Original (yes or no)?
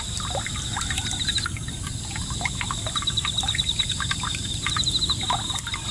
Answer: yes